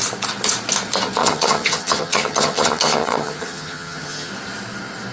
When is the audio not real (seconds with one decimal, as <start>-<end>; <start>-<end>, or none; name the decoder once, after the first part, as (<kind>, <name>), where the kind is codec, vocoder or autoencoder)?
1.2-4.3 (vocoder, HiFi-GAN)